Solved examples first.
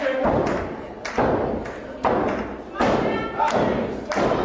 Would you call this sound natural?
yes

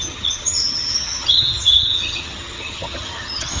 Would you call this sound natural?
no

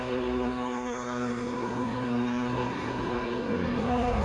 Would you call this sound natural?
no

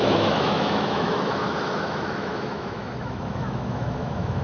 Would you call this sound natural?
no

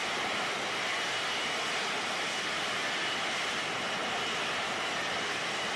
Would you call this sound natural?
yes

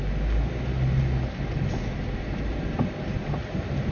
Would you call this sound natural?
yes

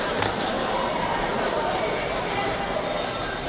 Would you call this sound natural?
yes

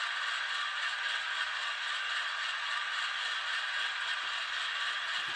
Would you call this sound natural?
yes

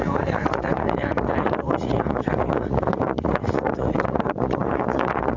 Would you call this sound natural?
no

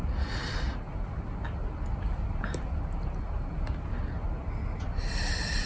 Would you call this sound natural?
yes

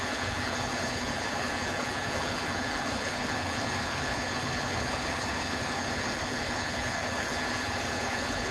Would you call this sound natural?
no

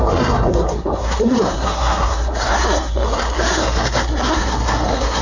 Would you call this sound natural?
no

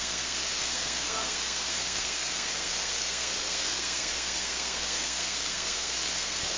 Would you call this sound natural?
no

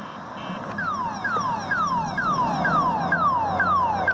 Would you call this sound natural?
yes